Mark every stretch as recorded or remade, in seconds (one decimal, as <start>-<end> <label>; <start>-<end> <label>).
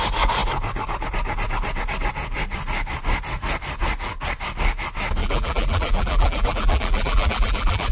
0.0-5.2 recorded; 5.2-7.9 remade